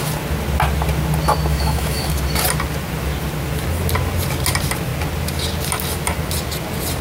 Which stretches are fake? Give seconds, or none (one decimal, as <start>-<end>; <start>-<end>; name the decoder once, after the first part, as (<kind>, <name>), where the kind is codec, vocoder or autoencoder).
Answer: 1.5-2.1 (autoencoder, DAC-VAE)